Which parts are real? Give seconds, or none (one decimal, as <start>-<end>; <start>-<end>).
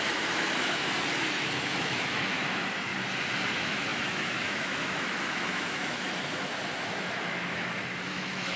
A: 0.8-1.3; 2.9-3.5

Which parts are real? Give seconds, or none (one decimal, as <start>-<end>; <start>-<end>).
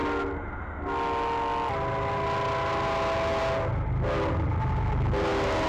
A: 0.0-5.7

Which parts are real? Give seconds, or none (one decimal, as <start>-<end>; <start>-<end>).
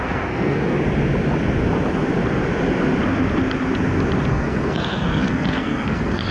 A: 0.7-4.3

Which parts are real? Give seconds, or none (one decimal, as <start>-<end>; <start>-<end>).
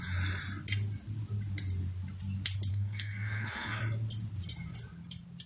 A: 0.0-2.7; 3.8-5.5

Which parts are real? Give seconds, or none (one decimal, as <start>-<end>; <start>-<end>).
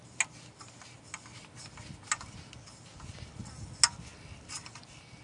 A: 0.0-5.2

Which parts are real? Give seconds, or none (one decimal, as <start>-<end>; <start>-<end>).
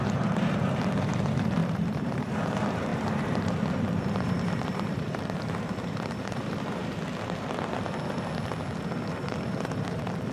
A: 6.8-9.1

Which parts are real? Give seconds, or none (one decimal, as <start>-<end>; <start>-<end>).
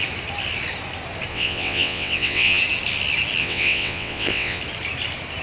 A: 0.0-1.3; 2.6-3.4; 4.6-5.4